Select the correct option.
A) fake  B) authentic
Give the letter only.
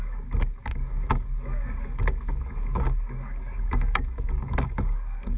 A